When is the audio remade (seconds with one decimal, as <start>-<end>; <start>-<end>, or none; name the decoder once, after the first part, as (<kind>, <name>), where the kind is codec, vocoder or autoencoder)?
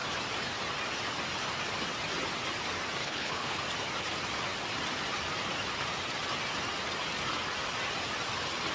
3.0-3.6 (codec, HILCodec)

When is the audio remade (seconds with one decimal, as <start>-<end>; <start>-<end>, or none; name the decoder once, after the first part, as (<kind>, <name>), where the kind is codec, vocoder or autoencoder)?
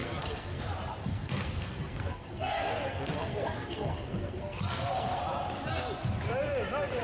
0.0-0.6 (codec, SNAC); 1.0-5.2